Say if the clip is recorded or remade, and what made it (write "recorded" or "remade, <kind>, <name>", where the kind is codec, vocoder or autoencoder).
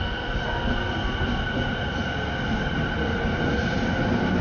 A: recorded